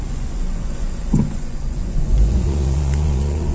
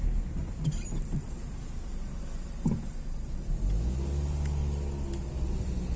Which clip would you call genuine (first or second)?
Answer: second